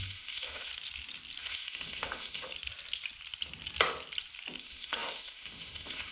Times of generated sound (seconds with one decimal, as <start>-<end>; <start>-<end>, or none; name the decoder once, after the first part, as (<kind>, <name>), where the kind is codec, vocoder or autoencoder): 0.0-0.7 (autoencoder, DAC-VAE); 1.4-2.5; 4.6-6.1